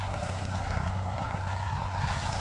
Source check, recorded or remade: remade